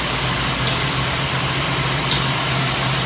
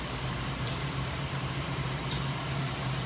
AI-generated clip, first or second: second